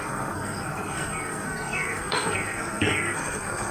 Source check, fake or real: fake